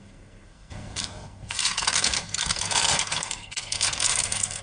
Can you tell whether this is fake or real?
fake